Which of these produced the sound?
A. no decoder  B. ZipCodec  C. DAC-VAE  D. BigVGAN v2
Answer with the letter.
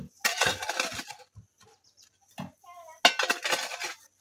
A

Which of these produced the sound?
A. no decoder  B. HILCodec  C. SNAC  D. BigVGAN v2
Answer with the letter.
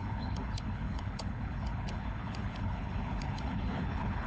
B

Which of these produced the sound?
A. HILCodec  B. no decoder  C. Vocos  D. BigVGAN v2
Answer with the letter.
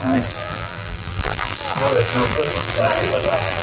D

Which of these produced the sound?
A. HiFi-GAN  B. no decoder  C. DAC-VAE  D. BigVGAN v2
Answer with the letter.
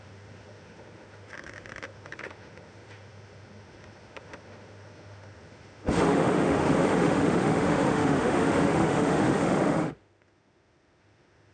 C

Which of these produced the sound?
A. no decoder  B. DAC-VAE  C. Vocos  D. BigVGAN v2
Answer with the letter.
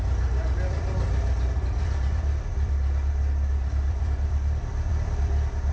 D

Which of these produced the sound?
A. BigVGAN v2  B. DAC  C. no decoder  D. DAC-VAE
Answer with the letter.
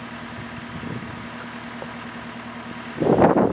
C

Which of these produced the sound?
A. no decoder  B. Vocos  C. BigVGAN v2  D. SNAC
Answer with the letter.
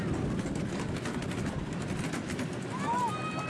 A